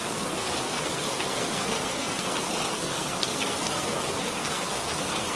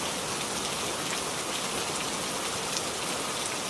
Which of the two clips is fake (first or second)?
first